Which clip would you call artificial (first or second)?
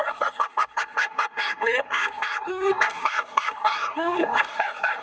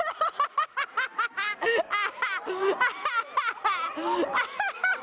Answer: first